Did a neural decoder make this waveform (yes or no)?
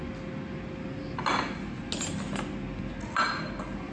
no